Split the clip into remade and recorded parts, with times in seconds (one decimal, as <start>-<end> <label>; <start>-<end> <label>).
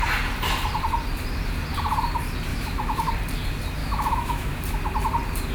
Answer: 0.0-2.5 recorded; 2.5-3.1 remade; 3.1-3.8 recorded; 3.8-4.6 remade; 4.6-5.5 recorded